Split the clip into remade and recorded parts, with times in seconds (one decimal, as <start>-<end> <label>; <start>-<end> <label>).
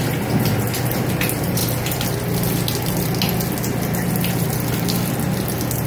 0.0-5.9 recorded